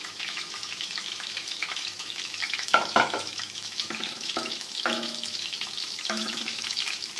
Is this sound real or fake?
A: fake